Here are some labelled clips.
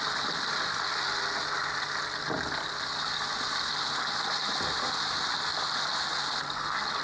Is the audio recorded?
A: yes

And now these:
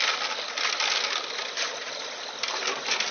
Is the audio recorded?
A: yes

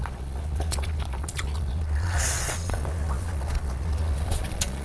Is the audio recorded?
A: no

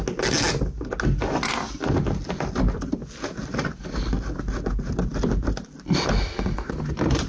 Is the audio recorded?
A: yes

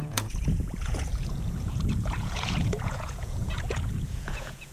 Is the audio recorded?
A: no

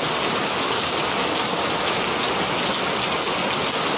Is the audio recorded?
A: yes